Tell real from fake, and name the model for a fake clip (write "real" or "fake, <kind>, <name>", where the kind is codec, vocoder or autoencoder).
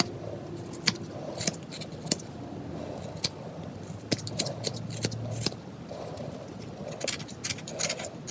real